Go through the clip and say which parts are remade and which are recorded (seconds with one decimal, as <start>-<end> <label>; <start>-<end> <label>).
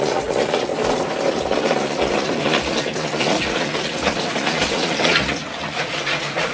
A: 0.0-0.7 remade; 0.7-1.3 recorded; 1.3-6.5 remade